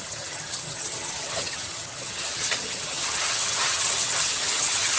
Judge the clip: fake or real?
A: fake